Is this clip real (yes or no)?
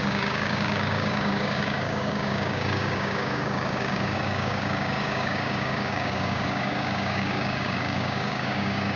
no